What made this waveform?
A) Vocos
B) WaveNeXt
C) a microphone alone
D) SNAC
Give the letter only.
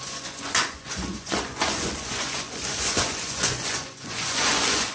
A